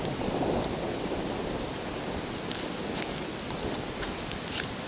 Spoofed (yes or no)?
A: no